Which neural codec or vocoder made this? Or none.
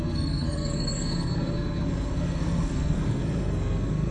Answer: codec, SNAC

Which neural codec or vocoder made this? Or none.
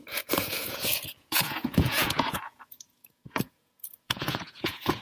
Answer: vocoder, Vocos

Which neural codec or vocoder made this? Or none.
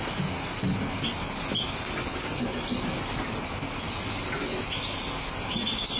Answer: none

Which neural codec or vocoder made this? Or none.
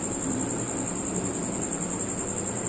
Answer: none